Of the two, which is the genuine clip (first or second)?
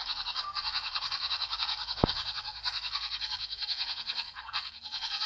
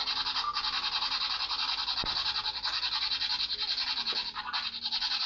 second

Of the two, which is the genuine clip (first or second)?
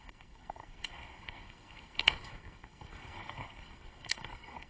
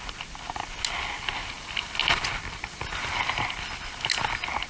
second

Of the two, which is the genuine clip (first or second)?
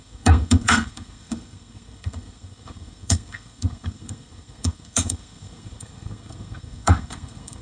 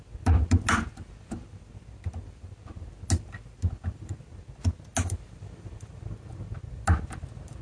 second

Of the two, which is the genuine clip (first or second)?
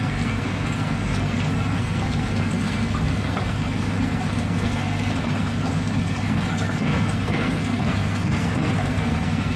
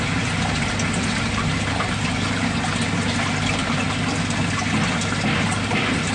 second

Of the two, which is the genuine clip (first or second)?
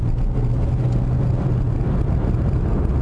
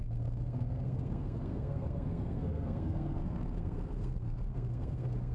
first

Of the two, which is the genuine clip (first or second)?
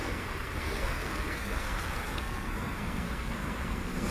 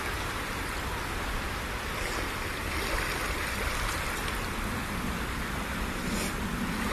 second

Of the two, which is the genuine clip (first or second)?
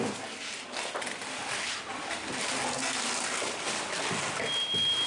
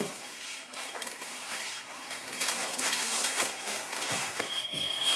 first